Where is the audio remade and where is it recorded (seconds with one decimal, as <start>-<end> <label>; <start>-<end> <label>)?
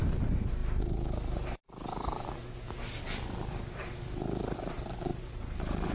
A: 0.0-5.1 recorded; 5.1-5.9 remade